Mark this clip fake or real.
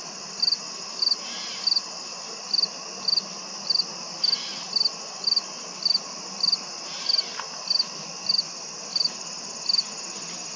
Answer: real